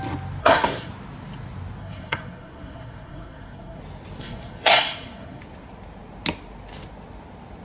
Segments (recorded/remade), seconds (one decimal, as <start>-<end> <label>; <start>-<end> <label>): 0.0-0.4 recorded; 0.4-0.9 remade; 0.9-1.8 recorded; 1.8-3.8 remade; 3.8-4.2 recorded; 4.2-5.4 remade; 5.4-7.6 recorded